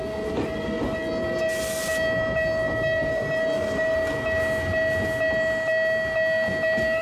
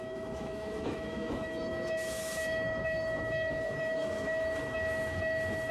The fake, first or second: second